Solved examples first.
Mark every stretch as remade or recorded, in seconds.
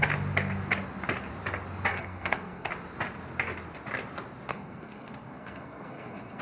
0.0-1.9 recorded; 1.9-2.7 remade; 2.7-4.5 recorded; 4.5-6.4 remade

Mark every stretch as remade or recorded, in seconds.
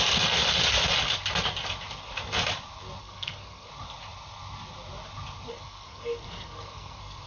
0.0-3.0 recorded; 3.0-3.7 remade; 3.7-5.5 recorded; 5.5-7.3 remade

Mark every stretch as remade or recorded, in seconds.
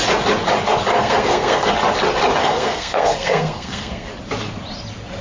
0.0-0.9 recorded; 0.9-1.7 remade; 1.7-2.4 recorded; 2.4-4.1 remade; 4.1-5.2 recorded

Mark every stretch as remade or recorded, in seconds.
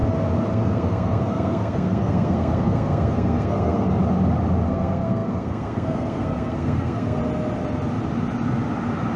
0.0-0.5 recorded; 0.5-4.0 remade; 4.0-4.7 recorded; 4.7-7.2 remade; 7.2-9.2 recorded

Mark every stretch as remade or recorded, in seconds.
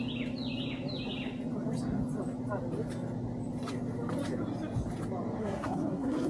0.0-5.4 recorded; 5.4-6.3 remade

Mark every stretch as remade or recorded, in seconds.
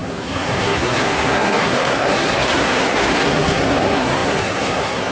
0.0-5.1 remade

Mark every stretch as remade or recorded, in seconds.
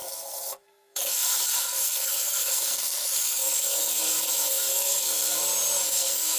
0.0-5.4 remade; 5.4-5.9 recorded; 5.9-6.4 remade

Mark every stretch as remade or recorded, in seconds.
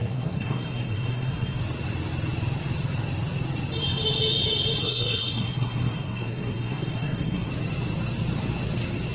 0.0-1.6 remade; 1.6-4.8 recorded; 4.8-7.5 remade; 7.5-9.1 recorded